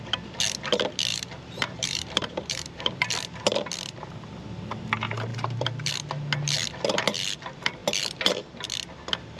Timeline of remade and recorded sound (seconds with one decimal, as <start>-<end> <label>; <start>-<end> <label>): 0.0-1.1 recorded; 1.1-2.9 remade; 2.9-5.3 recorded; 5.3-5.9 remade; 5.9-9.4 recorded